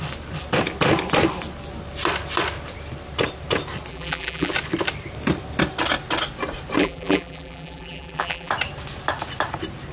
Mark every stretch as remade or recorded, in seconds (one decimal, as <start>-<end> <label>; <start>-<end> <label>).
0.0-3.9 recorded; 3.9-4.5 remade; 4.5-6.8 recorded; 6.8-8.5 remade; 8.5-9.9 recorded